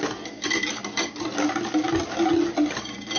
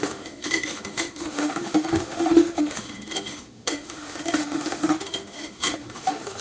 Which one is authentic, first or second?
first